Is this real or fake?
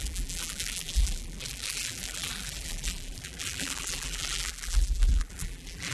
fake